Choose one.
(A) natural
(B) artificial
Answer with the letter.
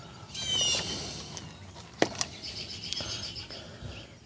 A